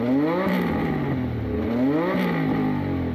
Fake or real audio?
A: real